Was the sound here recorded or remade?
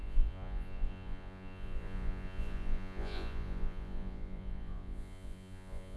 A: remade